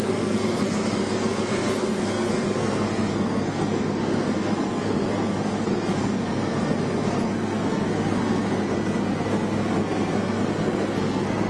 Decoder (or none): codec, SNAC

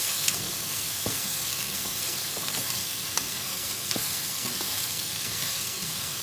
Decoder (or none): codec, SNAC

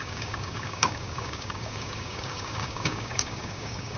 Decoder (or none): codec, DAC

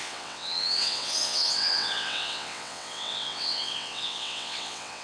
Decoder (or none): vocoder, WaveNeXt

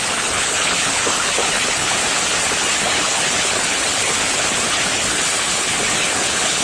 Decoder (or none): codec, HILCodec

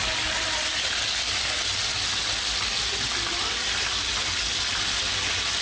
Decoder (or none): none